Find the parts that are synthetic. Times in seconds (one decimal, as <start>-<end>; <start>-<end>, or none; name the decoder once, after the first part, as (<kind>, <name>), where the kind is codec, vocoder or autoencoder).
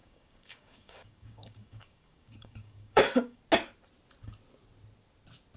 0.0-3.4 (codec, DAC)